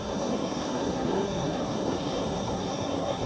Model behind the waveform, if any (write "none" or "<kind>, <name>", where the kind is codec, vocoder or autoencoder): codec, SNAC